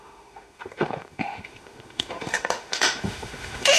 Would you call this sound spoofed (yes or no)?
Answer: yes